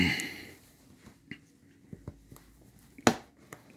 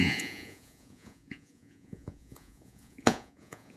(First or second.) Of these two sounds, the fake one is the second